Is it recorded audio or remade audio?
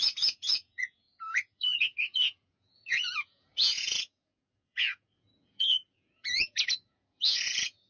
remade